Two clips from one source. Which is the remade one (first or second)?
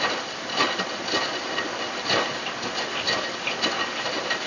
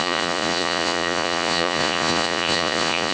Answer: second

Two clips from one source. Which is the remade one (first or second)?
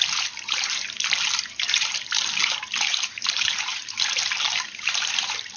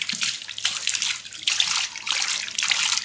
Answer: first